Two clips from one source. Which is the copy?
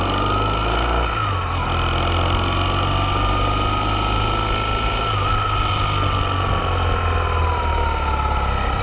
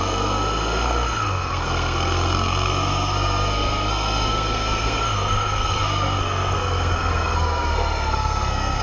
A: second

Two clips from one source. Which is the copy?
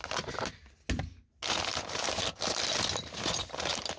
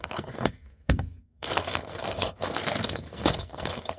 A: second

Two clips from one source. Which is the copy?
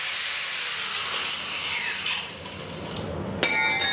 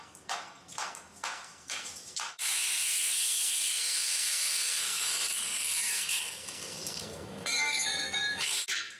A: second